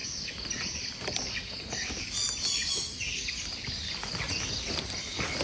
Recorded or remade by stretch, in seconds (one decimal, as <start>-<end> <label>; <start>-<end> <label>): 0.0-5.4 recorded